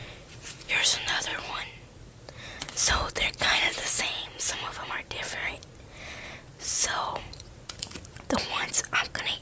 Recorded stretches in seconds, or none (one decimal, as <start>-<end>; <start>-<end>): 0.7-1.3; 4.9-5.4; 6.0-6.5; 8.7-9.4

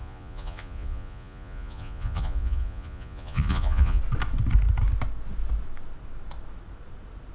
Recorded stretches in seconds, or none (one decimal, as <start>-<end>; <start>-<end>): 4.0-7.3

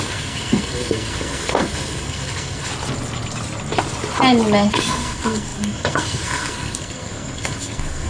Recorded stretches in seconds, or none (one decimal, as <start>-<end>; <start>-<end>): 2.7-4.7

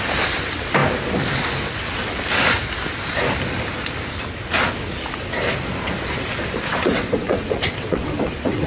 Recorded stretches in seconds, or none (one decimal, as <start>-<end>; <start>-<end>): 0.0-6.7

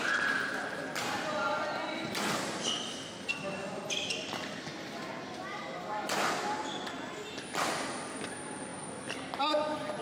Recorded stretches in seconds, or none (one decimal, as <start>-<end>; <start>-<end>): 0.0-10.0

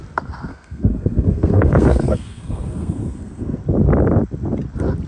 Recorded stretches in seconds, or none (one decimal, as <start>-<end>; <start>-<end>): 0.0-0.5; 3.6-5.1